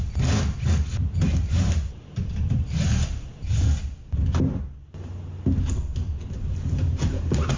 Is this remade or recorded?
recorded